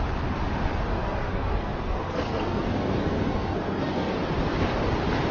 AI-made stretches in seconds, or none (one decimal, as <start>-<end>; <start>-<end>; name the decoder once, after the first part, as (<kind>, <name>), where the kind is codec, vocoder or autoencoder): 0.9-4.1 (codec, SNAC)

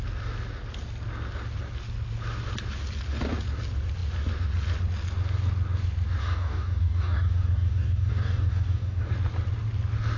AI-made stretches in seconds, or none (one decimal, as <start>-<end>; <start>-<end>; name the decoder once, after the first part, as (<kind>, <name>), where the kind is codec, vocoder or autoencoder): 6.2-9.1 (codec, DAC)